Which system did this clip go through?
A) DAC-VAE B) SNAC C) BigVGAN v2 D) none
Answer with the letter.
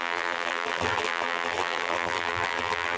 C